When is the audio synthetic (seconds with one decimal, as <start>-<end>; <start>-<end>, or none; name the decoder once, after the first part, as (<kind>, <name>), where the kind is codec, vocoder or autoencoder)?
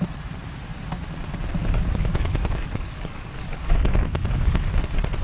1.6-4.7 (codec, DAC)